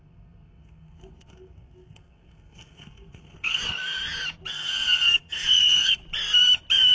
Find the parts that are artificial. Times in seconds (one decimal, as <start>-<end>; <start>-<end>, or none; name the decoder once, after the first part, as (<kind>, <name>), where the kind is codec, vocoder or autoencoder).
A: 0.0-3.6 (codec, SNAC); 4.5-6.0